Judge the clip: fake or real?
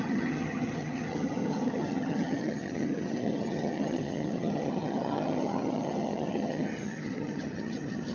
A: fake